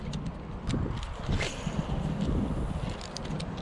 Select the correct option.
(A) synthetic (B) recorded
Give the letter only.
B